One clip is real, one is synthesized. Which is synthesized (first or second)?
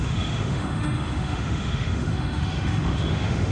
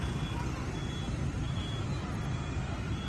first